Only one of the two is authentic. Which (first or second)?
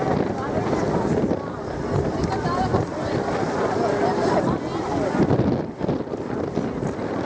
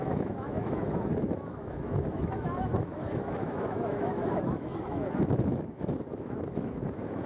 first